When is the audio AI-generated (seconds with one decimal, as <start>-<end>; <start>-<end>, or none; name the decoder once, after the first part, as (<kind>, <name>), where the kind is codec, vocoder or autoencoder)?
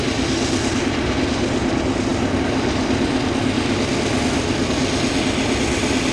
none